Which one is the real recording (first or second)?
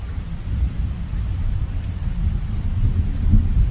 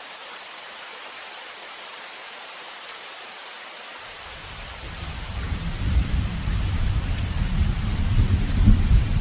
first